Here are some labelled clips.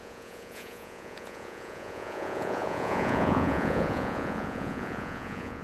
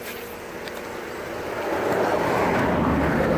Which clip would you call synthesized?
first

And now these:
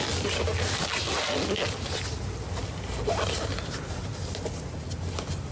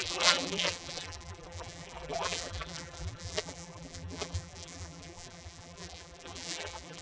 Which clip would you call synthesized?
second